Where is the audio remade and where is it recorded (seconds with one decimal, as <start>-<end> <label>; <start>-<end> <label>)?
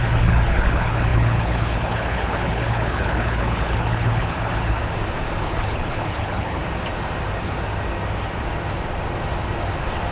0.0-4.8 remade; 4.8-5.4 recorded; 5.4-6.6 remade; 6.6-10.1 recorded